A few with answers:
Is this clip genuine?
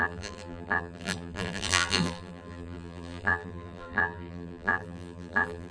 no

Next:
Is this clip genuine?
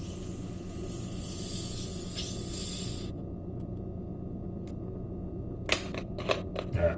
yes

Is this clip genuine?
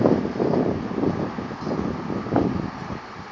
yes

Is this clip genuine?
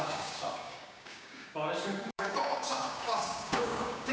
no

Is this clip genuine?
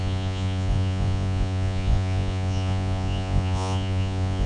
no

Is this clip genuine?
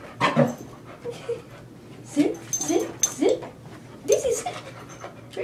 yes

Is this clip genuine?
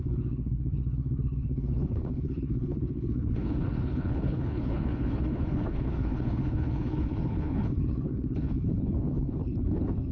no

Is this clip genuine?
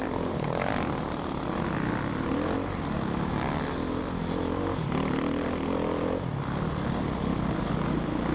yes